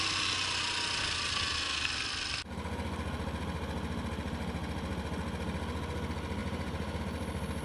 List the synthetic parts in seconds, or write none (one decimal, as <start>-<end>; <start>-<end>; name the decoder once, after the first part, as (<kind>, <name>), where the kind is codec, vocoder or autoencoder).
6.4-7.0 (vocoder, BigVGAN v2)